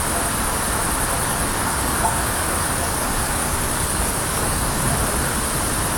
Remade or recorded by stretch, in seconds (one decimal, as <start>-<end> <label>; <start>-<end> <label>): 0.0-1.3 recorded; 1.3-4.9 remade; 4.9-6.0 recorded